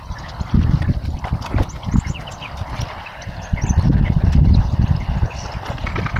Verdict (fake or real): real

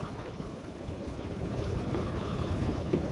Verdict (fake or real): fake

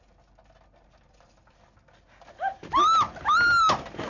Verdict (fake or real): real